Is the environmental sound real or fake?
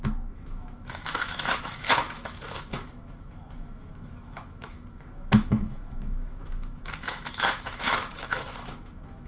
fake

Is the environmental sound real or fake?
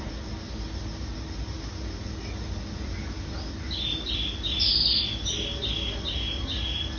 real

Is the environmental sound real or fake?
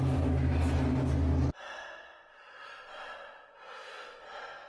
real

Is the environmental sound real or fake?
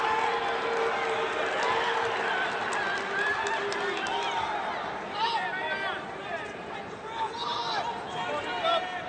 real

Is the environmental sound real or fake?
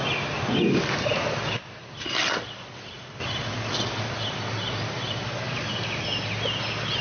real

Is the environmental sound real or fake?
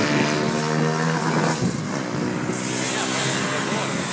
real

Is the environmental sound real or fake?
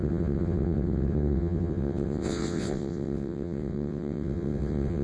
fake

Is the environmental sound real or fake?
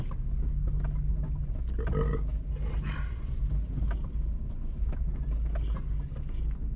real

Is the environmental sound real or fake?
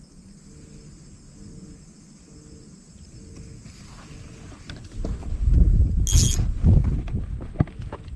real